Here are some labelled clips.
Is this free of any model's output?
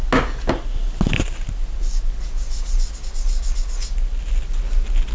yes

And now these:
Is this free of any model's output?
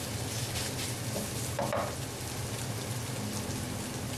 yes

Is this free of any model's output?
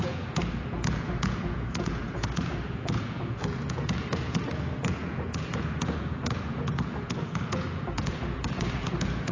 no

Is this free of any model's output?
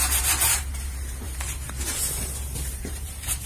no